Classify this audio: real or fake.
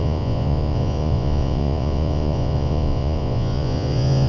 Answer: fake